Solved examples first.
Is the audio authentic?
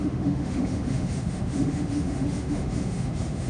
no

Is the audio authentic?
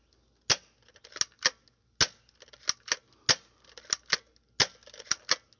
yes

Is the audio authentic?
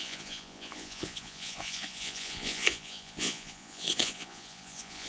no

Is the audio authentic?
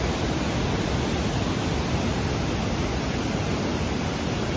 yes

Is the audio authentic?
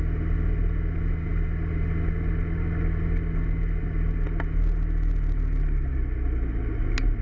yes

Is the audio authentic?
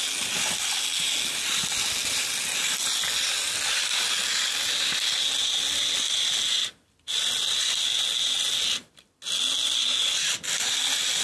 yes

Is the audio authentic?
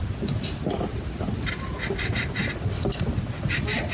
yes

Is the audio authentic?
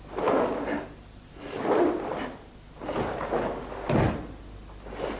yes